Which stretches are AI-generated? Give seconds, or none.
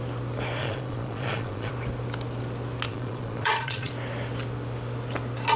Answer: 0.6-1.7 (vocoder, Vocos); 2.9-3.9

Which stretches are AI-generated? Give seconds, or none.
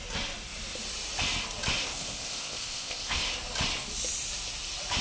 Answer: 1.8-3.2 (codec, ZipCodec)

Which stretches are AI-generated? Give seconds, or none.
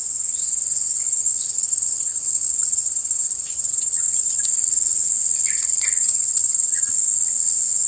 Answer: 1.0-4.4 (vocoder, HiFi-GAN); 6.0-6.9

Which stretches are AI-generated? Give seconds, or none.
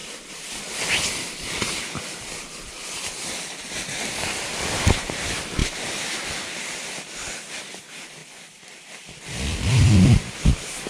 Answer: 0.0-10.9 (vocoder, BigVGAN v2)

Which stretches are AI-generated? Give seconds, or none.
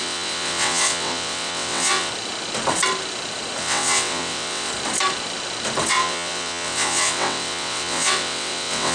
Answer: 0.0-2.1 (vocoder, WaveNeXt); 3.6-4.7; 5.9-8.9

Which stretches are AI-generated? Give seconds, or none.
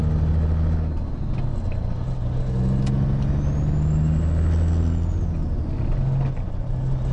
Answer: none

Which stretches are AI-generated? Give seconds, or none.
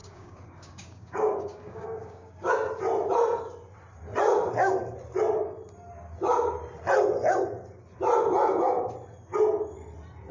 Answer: 0.0-2.5 (codec, DAC)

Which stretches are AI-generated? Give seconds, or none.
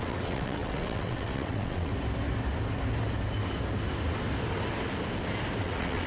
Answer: 0.0-1.9 (vocoder, WaveNeXt); 5.6-6.1